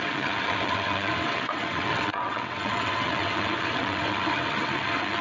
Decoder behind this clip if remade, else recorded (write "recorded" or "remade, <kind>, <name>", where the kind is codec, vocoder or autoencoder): remade, vocoder, WaveNeXt